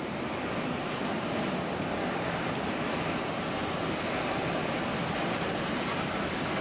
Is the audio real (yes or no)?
yes